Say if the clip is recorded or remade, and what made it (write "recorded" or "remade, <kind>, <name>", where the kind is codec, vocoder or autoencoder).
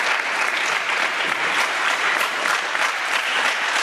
remade, vocoder, BigVGAN v2